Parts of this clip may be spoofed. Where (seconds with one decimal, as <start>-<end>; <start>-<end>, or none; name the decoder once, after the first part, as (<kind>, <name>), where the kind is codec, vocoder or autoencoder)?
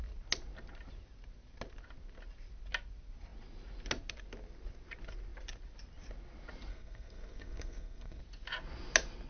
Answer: 6.7-8.2 (codec, SNAC)